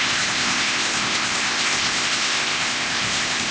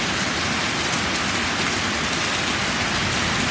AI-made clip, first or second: first